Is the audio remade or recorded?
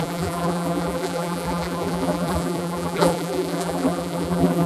remade